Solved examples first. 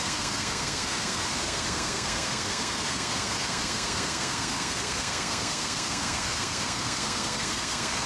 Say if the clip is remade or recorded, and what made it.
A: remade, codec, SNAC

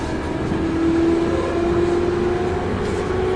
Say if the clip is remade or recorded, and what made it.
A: recorded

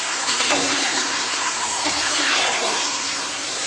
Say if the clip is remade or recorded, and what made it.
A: remade, codec, SNAC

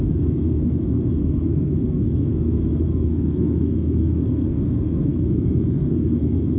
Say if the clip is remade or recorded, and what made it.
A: remade, codec, SNAC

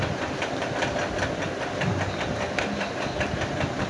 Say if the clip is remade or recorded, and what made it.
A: recorded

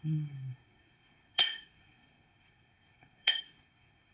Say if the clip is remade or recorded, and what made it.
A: remade, codec, SNAC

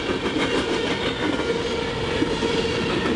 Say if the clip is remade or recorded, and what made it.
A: recorded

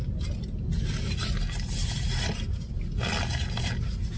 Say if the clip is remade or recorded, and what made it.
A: recorded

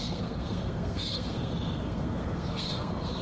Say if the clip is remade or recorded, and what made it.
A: remade, codec, SNAC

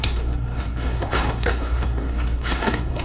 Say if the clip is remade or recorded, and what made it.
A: remade, codec, SNAC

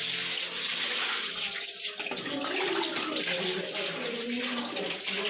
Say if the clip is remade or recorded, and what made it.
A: recorded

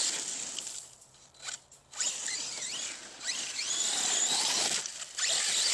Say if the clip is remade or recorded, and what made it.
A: recorded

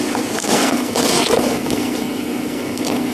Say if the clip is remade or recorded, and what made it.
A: remade, codec, SNAC